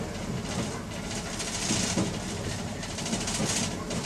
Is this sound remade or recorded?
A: recorded